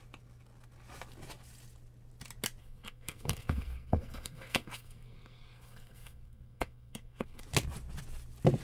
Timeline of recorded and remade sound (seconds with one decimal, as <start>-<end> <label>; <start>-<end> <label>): 0.0-2.6 recorded; 2.6-7.4 remade; 7.4-8.6 recorded

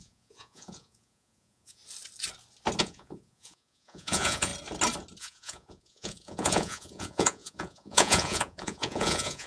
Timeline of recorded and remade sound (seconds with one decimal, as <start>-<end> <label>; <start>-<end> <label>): 0.0-1.8 remade; 1.8-2.8 recorded; 2.8-4.5 remade; 4.5-5.2 recorded; 5.2-9.5 remade

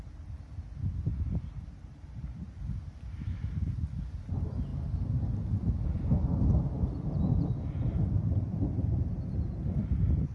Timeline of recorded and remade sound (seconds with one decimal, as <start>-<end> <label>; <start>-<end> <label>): 0.0-1.1 recorded; 1.1-2.6 remade; 2.6-10.3 recorded

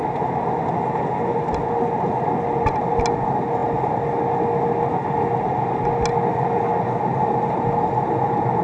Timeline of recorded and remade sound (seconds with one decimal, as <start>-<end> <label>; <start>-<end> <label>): 0.0-8.6 recorded

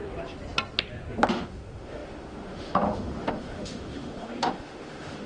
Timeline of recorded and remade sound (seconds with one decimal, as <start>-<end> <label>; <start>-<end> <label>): 0.0-1.3 recorded; 1.3-5.3 remade